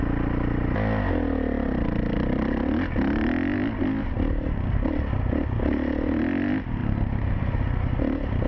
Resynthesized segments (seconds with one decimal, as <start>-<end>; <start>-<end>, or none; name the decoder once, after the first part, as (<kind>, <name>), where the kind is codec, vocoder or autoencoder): none